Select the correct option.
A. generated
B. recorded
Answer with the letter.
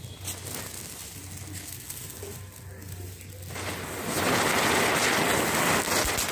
B